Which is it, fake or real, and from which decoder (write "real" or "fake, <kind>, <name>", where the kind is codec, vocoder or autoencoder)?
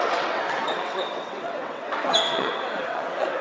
fake, vocoder, WaveNeXt